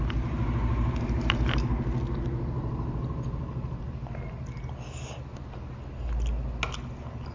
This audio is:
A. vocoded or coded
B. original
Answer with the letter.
B